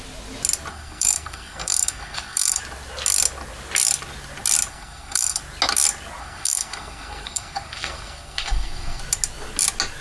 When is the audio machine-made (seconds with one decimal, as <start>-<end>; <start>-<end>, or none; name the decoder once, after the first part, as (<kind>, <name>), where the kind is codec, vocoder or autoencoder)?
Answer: 0.7-2.6 (codec, SNAC); 4.7-5.4; 6.2-9.0